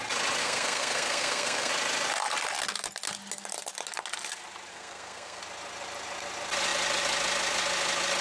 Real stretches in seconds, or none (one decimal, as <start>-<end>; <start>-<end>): 0.0-0.4; 1.7-4.7; 5.4-8.2